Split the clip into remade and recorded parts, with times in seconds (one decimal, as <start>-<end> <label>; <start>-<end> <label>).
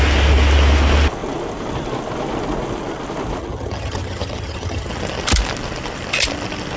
0.0-3.4 recorded; 3.4-4.9 remade; 4.9-6.8 recorded